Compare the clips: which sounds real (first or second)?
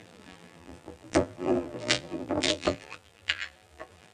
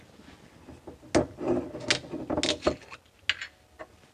second